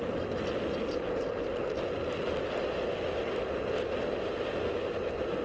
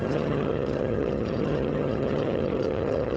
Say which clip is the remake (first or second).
second